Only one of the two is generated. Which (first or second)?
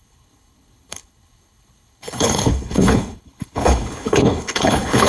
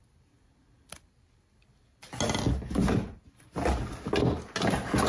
first